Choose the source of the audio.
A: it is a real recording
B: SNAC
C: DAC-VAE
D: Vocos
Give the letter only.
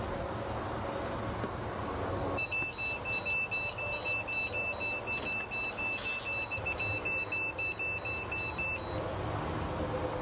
A